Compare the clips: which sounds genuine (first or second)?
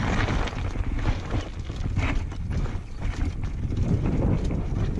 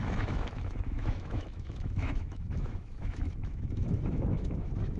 first